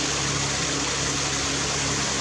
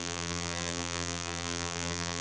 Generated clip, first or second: second